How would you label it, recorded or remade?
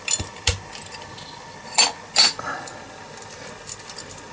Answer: recorded